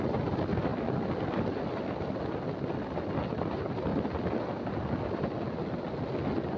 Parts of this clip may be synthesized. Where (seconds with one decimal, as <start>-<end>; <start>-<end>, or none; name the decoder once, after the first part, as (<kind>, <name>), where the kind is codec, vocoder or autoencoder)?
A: 3.9-4.7 (vocoder, BigVGAN v2)